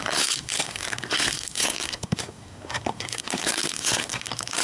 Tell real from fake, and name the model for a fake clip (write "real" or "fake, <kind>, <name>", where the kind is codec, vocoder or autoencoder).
fake, codec, SNAC